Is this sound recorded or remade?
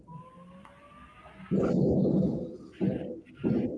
recorded